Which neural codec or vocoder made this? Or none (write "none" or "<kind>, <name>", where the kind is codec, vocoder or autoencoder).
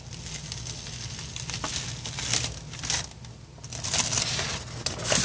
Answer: none